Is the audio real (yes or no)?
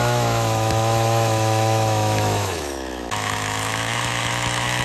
no